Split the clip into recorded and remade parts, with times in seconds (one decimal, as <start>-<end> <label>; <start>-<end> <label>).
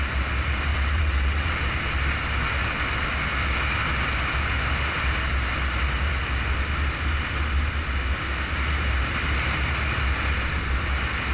0.0-0.7 recorded; 0.7-1.5 remade; 1.5-11.3 recorded